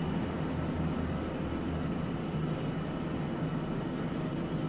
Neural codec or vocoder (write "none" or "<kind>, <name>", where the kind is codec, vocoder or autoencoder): none